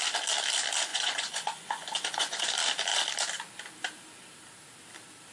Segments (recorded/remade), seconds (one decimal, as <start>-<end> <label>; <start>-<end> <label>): 0.0-0.9 recorded; 0.9-2.4 remade; 2.4-5.3 recorded